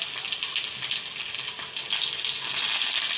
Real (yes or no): yes